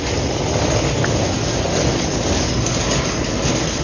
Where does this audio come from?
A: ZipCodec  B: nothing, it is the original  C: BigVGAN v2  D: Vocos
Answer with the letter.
B